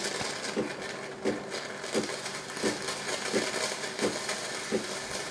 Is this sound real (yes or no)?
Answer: yes